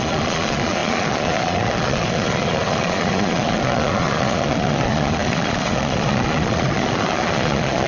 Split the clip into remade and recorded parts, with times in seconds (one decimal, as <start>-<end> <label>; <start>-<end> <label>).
0.0-7.9 remade